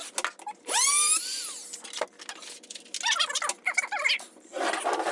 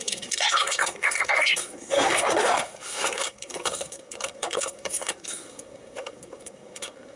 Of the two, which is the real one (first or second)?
first